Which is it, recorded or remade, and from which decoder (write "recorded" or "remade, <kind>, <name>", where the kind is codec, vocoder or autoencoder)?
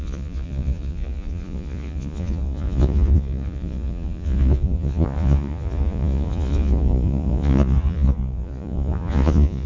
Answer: remade, vocoder, Vocos